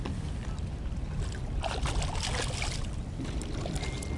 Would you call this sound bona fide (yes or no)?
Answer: yes